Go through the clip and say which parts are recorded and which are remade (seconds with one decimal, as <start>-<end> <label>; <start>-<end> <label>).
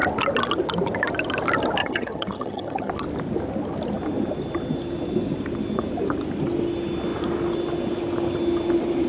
0.0-1.8 recorded; 1.8-2.9 remade; 2.9-9.1 recorded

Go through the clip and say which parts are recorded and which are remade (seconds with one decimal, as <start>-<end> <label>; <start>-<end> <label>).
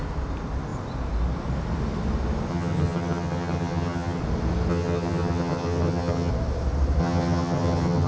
0.0-2.5 recorded; 2.5-4.2 remade; 4.2-4.7 recorded; 4.7-6.3 remade; 6.3-7.0 recorded; 7.0-8.1 remade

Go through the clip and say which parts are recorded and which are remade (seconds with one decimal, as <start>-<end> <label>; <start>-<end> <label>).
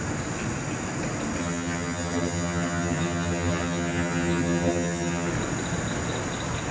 0.0-1.4 recorded; 1.4-5.3 remade; 5.3-6.7 recorded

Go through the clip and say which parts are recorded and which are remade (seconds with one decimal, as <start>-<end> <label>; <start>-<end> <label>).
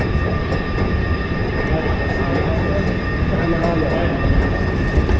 0.0-5.2 recorded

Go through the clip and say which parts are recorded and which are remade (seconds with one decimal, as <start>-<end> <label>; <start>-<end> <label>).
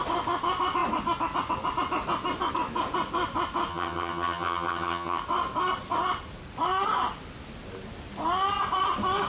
0.0-3.7 recorded; 3.7-5.2 remade; 5.2-9.3 recorded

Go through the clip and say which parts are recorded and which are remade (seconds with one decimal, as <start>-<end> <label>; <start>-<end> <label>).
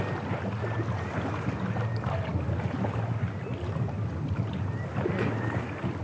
0.0-6.0 recorded